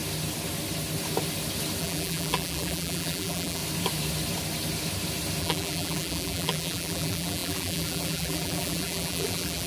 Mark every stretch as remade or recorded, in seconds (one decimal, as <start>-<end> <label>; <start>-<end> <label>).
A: 0.0-1.8 recorded; 1.8-3.6 remade; 3.6-5.4 recorded; 5.4-9.7 remade